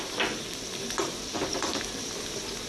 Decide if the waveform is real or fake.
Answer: real